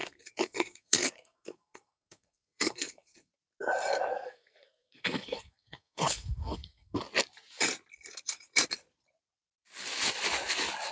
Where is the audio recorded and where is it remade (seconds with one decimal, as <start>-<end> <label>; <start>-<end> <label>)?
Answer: 0.0-3.3 remade; 3.3-4.1 recorded; 4.1-7.0 remade; 7.0-10.9 recorded